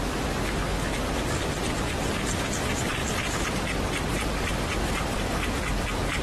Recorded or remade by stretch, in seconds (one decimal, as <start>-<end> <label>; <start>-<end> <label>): 0.0-3.0 recorded; 3.0-5.2 remade; 5.2-6.2 recorded